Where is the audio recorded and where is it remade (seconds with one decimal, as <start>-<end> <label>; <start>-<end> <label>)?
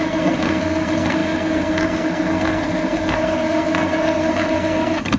0.0-5.2 remade